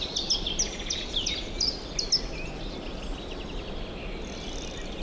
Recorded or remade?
recorded